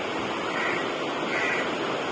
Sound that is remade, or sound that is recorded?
recorded